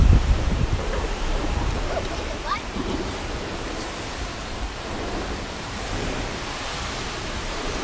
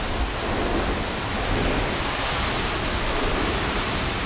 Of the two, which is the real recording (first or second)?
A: second